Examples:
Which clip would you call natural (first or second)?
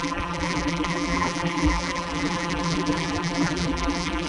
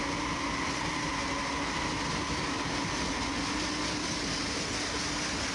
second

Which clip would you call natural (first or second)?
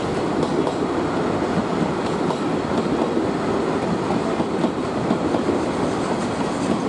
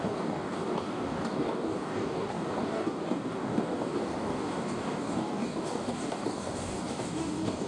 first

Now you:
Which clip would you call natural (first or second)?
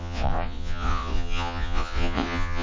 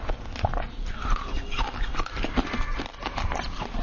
second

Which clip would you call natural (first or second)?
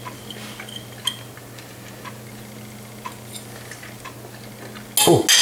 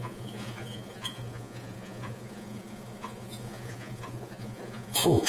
first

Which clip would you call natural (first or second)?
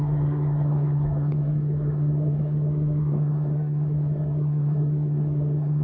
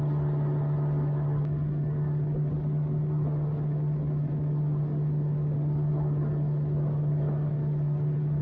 second